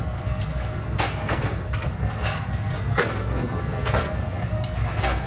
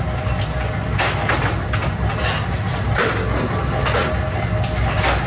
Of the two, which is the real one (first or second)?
second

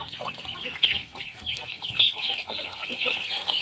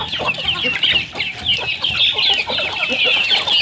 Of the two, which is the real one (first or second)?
second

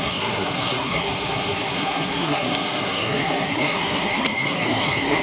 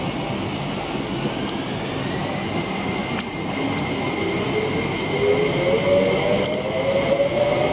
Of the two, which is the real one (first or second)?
second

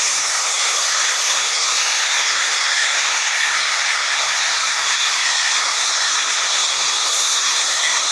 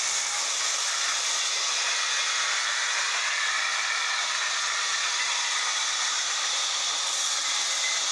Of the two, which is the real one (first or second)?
second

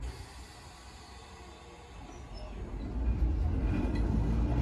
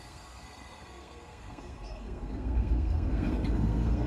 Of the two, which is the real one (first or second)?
first